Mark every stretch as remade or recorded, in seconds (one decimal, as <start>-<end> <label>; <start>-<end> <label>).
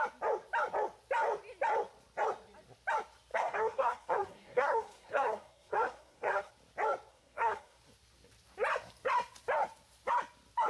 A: 0.0-3.3 recorded; 3.3-6.5 remade; 6.5-7.1 recorded; 7.1-7.8 remade; 7.8-10.7 recorded